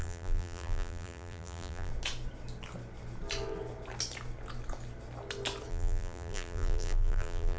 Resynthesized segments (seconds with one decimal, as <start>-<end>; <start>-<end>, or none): 0.0-1.9; 5.7-7.6